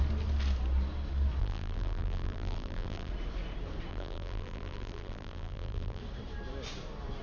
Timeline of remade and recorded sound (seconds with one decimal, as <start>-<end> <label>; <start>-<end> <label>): 0.0-1.4 recorded; 1.4-3.1 remade; 3.1-3.9 recorded; 3.9-6.0 remade; 6.0-7.2 recorded